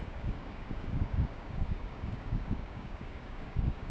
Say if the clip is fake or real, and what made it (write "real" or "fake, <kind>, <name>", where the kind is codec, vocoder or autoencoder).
fake, codec, DAC